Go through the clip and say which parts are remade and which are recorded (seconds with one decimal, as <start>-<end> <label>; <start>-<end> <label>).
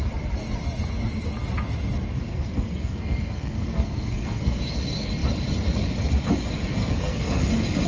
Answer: 0.0-2.3 recorded; 2.3-4.6 remade; 4.6-6.8 recorded; 6.8-7.5 remade; 7.5-7.9 recorded